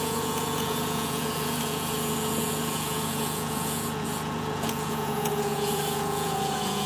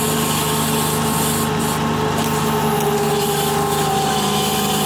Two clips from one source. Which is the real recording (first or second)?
second